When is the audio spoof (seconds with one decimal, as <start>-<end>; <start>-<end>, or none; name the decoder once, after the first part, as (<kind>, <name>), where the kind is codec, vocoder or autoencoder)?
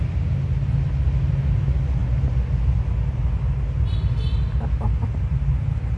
none